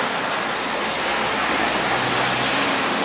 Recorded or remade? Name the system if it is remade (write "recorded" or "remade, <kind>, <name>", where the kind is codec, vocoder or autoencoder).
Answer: recorded